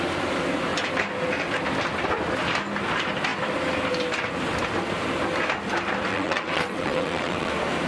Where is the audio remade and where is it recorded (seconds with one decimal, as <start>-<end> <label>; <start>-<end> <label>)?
0.0-6.1 recorded; 6.1-7.5 remade; 7.5-7.9 recorded